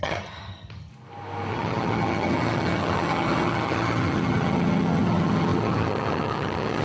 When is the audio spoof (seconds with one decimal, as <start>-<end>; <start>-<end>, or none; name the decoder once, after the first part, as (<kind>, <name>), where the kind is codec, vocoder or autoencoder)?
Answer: 0.0-0.9 (vocoder, HiFi-GAN); 1.5-6.8